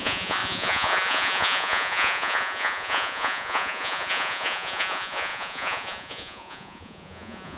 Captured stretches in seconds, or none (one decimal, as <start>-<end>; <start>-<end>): none